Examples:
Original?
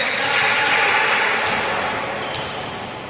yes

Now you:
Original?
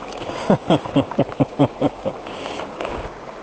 no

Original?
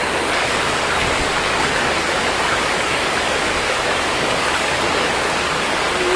no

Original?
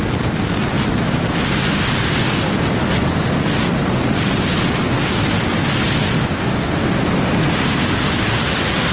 yes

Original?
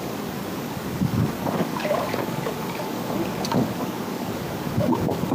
no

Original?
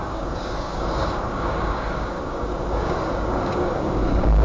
no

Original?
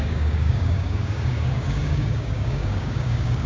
no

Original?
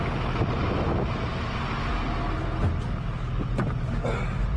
yes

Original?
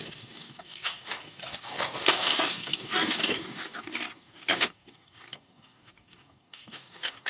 no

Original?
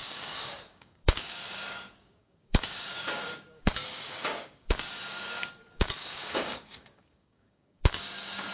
no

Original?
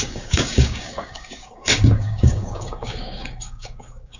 no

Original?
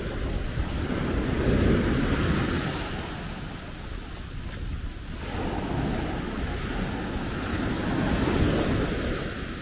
yes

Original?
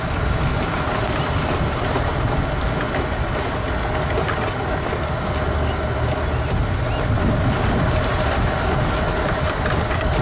yes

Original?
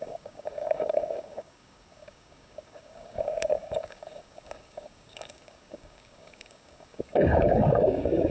no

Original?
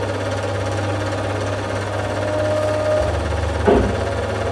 yes